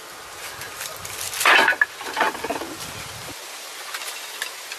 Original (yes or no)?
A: yes